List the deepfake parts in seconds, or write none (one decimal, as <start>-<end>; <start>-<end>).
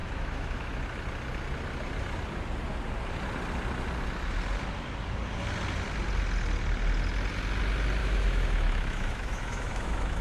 0.0-0.8; 8.0-10.2